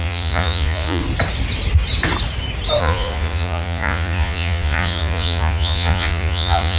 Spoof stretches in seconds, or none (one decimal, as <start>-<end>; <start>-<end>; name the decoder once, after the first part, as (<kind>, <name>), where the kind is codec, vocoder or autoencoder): 0.0-1.0 (vocoder, Vocos); 2.8-6.8